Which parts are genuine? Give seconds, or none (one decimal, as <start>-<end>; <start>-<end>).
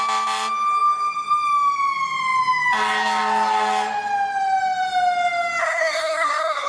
0.0-5.6